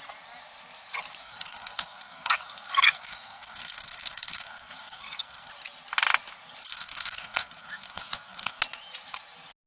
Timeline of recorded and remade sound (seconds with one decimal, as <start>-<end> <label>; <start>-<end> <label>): 0.0-1.2 recorded; 1.2-5.5 remade; 5.5-6.7 recorded; 6.7-8.6 remade; 8.6-9.7 recorded